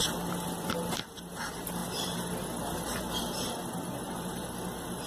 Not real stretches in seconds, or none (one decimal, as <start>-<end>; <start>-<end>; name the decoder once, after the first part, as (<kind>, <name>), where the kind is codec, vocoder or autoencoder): none

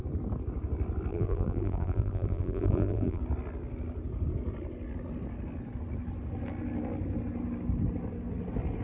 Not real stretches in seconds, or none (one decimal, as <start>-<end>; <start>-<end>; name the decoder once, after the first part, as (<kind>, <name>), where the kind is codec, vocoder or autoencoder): 1.1-3.2 (vocoder, BigVGAN v2)

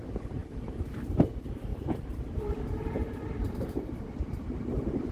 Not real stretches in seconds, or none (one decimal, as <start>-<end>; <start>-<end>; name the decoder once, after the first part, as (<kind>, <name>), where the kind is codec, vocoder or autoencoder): 1.7-5.1 (vocoder, BigVGAN v2)